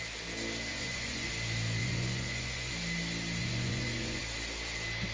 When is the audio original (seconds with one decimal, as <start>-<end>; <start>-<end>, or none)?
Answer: 0.0-0.7; 1.3-1.8; 2.7-3.4; 4.2-5.1